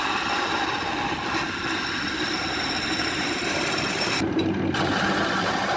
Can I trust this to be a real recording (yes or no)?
yes